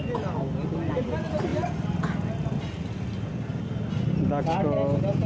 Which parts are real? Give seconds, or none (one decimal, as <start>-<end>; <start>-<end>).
0.0-5.3